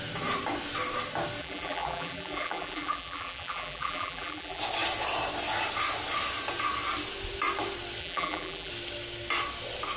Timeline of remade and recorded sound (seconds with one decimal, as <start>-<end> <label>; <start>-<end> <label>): 0.0-1.4 recorded; 1.4-4.6 remade; 4.6-8.0 recorded; 8.0-8.7 remade; 8.7-10.0 recorded